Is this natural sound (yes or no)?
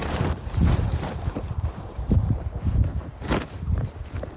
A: no